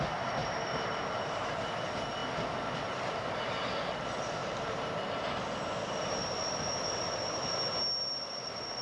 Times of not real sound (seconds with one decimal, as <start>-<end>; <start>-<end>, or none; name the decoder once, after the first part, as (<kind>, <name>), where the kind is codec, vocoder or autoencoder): 0.4-1.5 (vocoder, BigVGAN v2); 4.4-5.3